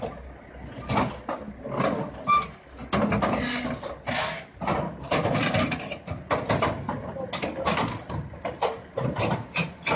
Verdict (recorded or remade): recorded